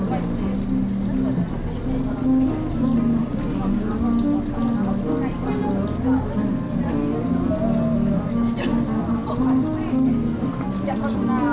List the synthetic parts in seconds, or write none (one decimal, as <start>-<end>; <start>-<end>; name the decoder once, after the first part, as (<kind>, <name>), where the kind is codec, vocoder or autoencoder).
3.2-3.9 (codec, DAC)